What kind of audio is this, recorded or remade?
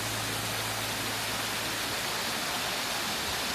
recorded